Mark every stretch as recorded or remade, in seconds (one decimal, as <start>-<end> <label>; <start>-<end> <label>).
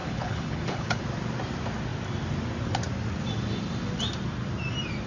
0.0-1.0 remade; 1.0-5.1 recorded